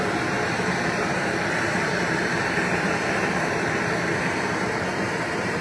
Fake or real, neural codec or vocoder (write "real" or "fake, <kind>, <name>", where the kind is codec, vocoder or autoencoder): fake, vocoder, BigVGAN v2